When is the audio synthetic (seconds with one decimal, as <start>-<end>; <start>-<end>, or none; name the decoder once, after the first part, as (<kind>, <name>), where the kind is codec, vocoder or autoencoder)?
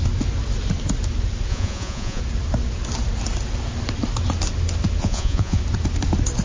1.5-2.2 (vocoder, Vocos); 5.0-5.6